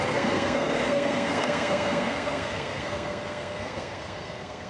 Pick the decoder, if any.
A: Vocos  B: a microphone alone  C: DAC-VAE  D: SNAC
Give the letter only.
D